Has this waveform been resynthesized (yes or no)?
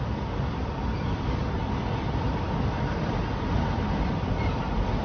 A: no